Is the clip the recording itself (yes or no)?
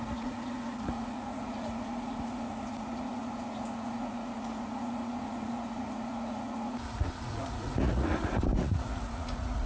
no